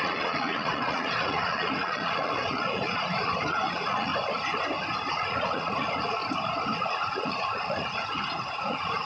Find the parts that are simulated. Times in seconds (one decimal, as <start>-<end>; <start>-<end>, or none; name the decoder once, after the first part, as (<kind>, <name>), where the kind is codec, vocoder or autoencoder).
0.0-4.1 (vocoder, Vocos); 5.1-6.2; 6.8-9.1